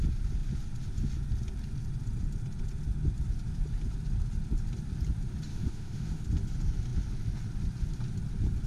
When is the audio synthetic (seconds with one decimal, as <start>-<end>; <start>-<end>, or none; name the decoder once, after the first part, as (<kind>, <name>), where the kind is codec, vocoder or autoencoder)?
5.5-6.2 (autoencoder, DAC-VAE)